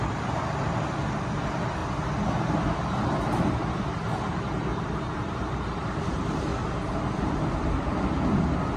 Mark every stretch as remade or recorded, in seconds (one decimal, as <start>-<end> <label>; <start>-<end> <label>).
0.0-1.8 remade; 1.8-3.4 recorded; 3.4-6.5 remade; 6.5-8.8 recorded